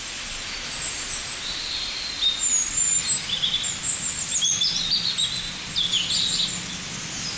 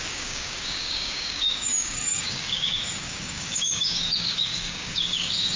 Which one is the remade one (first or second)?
second